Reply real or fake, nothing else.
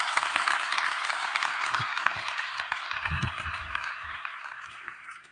fake